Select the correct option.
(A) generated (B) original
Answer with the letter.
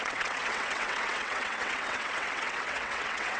A